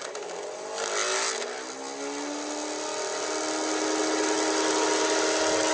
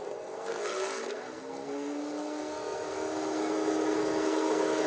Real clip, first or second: first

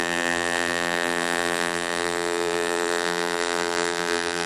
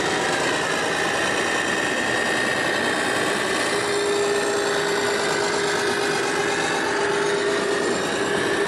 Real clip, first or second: second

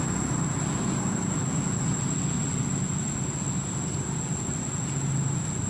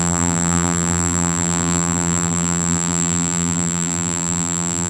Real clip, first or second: first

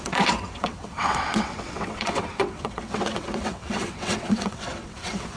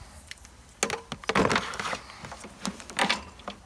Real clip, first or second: second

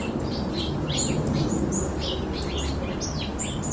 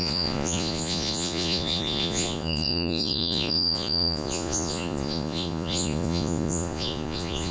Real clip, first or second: first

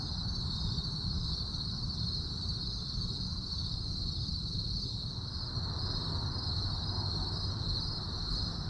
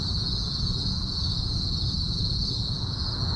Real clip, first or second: first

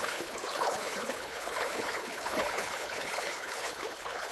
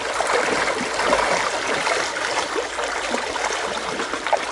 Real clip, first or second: second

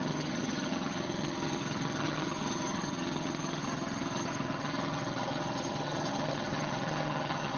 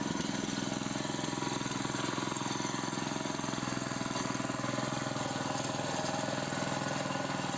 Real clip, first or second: second